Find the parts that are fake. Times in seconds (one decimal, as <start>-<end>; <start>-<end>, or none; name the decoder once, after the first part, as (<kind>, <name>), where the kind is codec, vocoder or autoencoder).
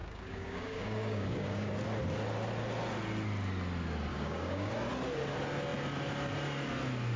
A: 0.0-1.7 (codec, DAC); 4.1-4.7